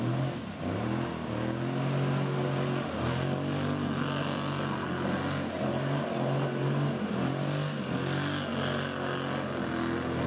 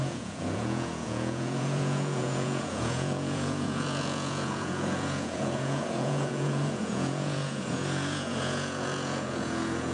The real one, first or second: first